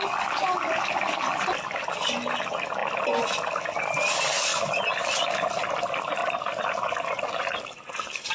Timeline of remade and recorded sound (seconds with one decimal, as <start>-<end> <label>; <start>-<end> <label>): 0.0-8.3 recorded